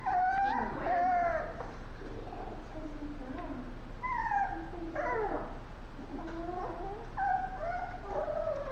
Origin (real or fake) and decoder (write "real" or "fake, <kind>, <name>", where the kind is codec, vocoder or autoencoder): real